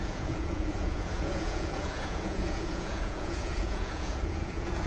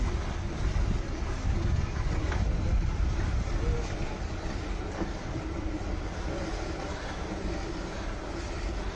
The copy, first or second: first